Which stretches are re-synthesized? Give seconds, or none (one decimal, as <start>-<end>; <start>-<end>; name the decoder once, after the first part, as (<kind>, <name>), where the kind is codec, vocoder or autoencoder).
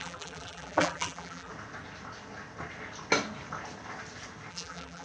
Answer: 0.0-1.5 (vocoder, BigVGAN v2); 4.5-5.0